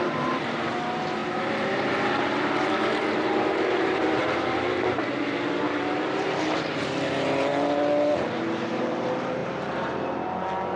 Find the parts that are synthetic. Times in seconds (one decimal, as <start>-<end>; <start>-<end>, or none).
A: 0.0-4.7; 5.8-10.8